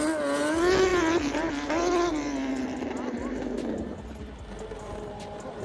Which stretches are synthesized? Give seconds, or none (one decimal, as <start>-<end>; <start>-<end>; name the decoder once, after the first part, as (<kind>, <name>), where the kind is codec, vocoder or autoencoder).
none